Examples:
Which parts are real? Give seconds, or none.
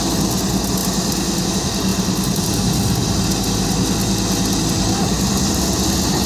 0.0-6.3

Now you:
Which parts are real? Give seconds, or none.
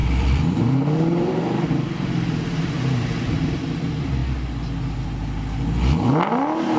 4.2-6.8